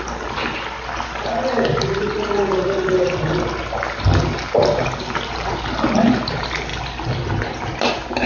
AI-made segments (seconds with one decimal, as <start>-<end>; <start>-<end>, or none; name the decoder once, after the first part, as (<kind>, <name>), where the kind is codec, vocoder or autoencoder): 6.7-8.3 (vocoder, BigVGAN v2)